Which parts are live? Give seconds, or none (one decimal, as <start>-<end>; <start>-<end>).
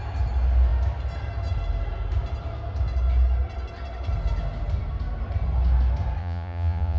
0.0-6.2